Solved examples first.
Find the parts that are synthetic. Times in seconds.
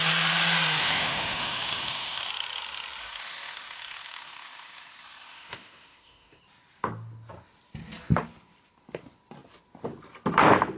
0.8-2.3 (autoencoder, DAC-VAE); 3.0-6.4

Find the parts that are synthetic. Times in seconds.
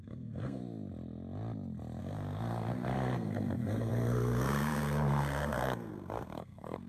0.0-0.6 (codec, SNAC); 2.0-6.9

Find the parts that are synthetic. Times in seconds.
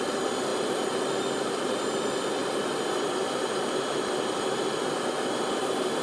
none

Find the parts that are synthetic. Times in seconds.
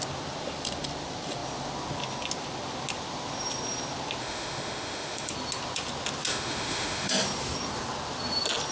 4.2-5.3 (autoencoder, DAC-VAE); 6.3-7.1